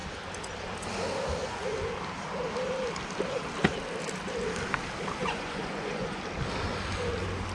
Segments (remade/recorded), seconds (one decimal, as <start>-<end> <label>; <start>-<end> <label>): 0.0-1.4 recorded; 1.4-1.9 remade; 1.9-5.2 recorded; 5.2-6.2 remade; 6.2-7.5 recorded